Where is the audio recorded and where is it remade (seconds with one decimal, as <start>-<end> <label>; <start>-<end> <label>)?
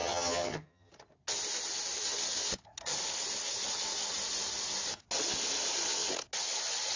0.0-0.9 remade; 0.9-7.0 recorded